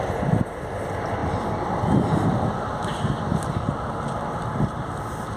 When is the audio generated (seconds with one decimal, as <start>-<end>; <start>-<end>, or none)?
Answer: none